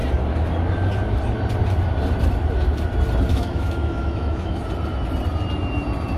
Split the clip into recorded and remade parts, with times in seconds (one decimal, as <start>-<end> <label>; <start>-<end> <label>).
0.0-3.3 recorded; 3.3-4.6 remade; 4.6-6.2 recorded